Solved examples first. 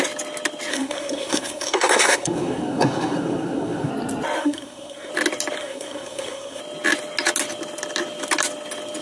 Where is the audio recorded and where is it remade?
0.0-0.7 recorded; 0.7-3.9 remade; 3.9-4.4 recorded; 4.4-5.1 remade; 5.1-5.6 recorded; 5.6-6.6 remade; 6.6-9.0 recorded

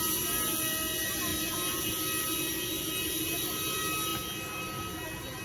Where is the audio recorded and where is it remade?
0.0-5.4 recorded

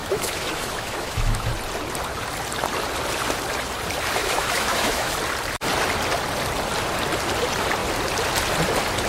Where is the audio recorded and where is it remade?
0.0-1.5 remade; 1.5-4.2 recorded; 4.2-5.1 remade; 5.1-9.1 recorded

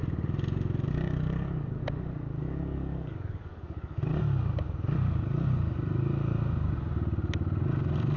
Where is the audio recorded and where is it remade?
0.0-0.9 recorded; 0.9-1.8 remade; 1.8-2.4 recorded; 2.4-4.1 remade; 4.1-8.2 recorded

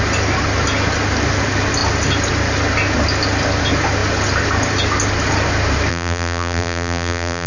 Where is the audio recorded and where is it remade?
0.0-5.9 recorded; 5.9-7.5 remade

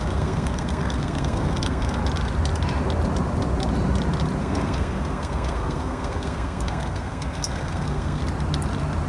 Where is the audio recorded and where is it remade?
0.0-2.0 remade; 2.0-4.4 recorded; 4.4-8.2 remade; 8.2-9.1 recorded